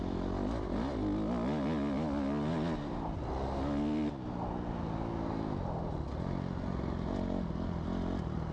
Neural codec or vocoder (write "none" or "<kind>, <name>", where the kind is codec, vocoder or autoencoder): none